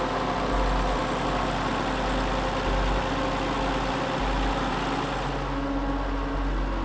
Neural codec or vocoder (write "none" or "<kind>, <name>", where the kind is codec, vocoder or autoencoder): none